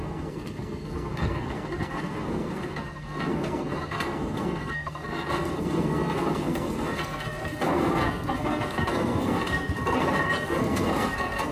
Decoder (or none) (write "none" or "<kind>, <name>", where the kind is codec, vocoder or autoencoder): codec, SNAC